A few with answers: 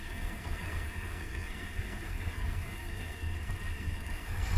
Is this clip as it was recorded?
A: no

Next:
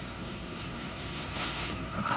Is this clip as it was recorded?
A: no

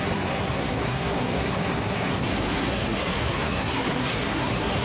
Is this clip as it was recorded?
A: no